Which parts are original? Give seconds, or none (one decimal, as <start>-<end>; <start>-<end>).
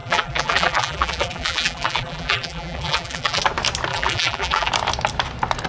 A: 3.4-3.9; 4.7-5.7